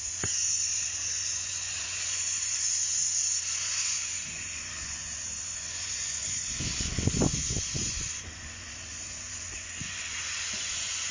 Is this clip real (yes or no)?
no